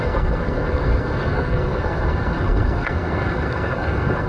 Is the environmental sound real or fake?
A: fake